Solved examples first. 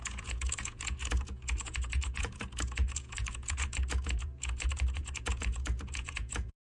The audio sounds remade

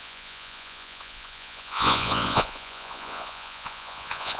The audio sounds remade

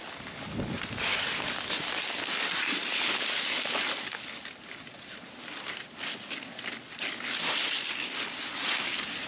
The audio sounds recorded